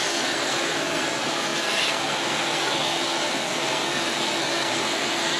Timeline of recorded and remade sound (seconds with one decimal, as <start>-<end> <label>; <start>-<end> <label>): 0.0-5.4 remade